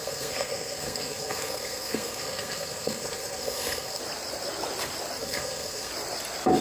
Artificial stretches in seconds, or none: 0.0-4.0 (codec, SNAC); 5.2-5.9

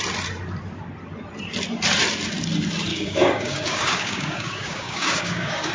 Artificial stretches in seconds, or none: 2.9-5.7 (codec, DAC)

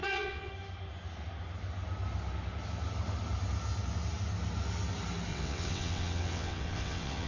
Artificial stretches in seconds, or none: 0.0-0.5 (vocoder, WaveNeXt); 5.3-7.3

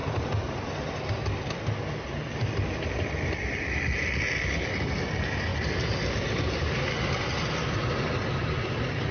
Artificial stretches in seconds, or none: none

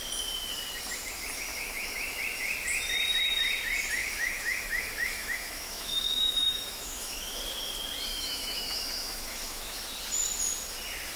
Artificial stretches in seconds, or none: 1.5-2.2 (autoencoder, DAC-VAE); 4.0-7.4; 8.1-9.8

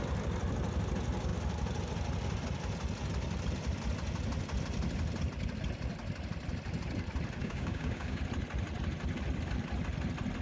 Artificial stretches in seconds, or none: 7.4-8.2 (codec, DAC)